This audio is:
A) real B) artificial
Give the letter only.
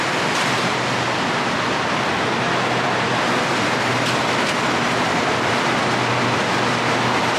A